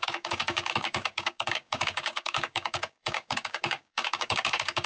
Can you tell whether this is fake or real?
fake